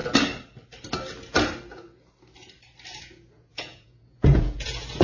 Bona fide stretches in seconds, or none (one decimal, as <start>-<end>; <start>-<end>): 0.0-3.0